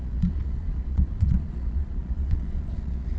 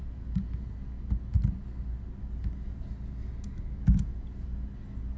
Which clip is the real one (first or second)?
second